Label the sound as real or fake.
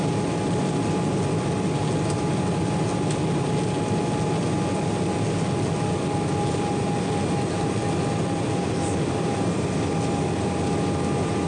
real